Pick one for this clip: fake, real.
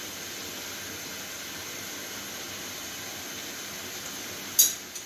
real